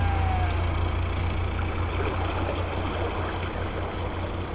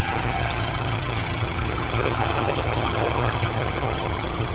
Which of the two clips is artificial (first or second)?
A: second